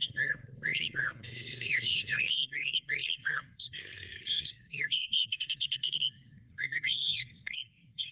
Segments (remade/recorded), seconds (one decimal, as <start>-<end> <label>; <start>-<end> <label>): 0.0-8.1 remade